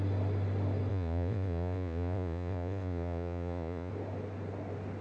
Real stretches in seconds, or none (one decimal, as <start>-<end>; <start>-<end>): 0.0-0.9; 3.9-5.0